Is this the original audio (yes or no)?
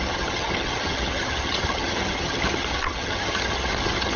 no